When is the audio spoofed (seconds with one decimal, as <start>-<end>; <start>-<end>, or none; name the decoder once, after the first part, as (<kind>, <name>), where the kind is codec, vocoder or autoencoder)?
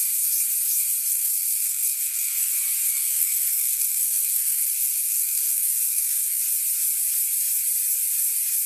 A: 1.1-2.5 (codec, SNAC); 2.9-6.4